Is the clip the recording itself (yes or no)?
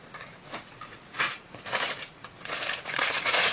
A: no